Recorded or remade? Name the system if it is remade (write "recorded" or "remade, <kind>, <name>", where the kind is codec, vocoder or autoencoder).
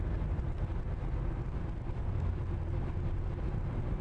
recorded